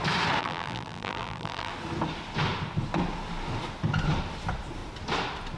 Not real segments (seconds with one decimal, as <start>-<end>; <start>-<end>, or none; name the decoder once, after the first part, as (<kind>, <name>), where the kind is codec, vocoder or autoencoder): 0.4-1.7 (vocoder, BigVGAN v2)